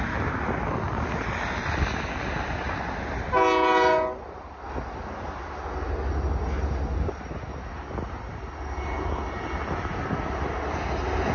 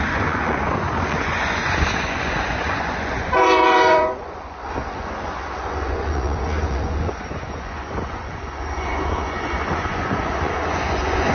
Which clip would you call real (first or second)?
first